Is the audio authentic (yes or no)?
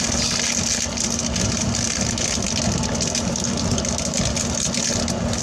yes